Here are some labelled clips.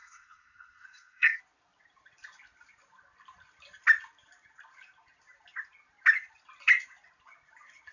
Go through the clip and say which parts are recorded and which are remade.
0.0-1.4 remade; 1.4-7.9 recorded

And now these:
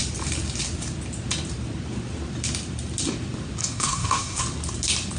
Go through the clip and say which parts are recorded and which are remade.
0.0-3.6 recorded; 3.6-4.4 remade; 4.4-5.2 recorded

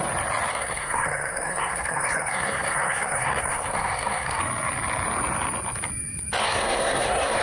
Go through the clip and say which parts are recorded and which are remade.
0.0-0.5 recorded; 0.5-4.4 remade; 4.4-6.4 recorded; 6.4-7.4 remade

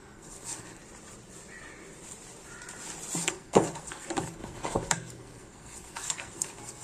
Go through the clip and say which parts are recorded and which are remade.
0.0-0.8 remade; 0.8-3.2 recorded; 3.2-6.8 remade

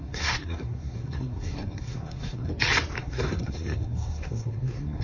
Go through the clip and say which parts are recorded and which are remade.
0.0-2.5 remade; 2.5-3.0 recorded; 3.0-5.0 remade

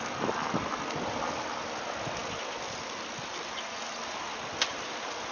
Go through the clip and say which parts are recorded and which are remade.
0.0-5.3 recorded